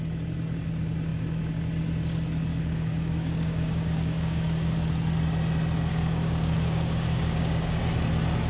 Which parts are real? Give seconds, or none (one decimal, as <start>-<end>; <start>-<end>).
0.0-2.5; 4.9-5.9; 7.8-8.5